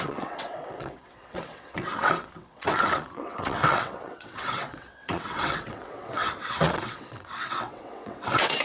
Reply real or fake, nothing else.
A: fake